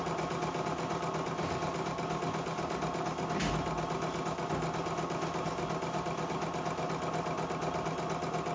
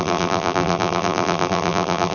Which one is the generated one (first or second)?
second